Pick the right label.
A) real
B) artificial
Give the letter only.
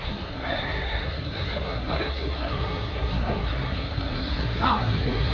B